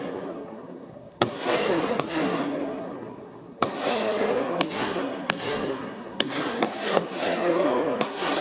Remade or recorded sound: remade